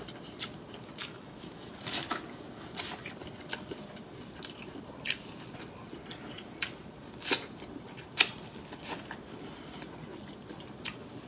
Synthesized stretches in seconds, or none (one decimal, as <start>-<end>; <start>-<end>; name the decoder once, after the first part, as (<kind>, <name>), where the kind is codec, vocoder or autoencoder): 1.0-1.7 (autoencoder, DAC-VAE)